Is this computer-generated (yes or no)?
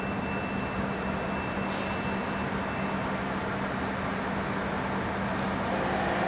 no